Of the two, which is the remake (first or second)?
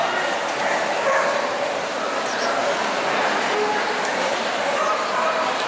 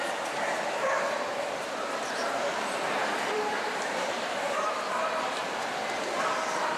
second